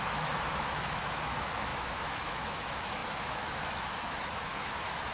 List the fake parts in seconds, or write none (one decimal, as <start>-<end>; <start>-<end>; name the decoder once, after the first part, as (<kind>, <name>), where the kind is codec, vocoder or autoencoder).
0.0-5.1 (autoencoder, DAC-VAE)